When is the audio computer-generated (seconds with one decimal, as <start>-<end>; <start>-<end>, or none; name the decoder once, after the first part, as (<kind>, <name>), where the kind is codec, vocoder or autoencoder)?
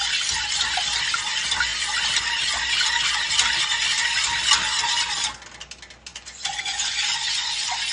6.1-7.5 (vocoder, Vocos)